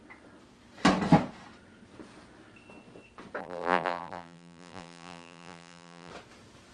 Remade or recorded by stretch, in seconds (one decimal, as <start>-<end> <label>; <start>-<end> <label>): 0.0-3.4 recorded; 3.4-6.1 remade; 6.1-6.7 recorded